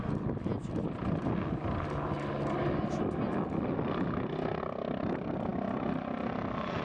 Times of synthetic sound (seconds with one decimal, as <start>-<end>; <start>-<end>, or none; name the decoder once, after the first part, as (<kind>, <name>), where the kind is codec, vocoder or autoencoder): none